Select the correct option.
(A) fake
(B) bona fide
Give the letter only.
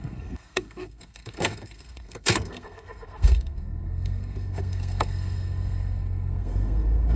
A